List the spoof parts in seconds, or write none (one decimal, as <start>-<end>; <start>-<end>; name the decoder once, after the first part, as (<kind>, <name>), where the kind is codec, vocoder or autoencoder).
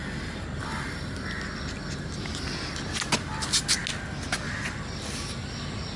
none